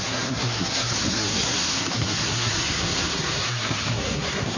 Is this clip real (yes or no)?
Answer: no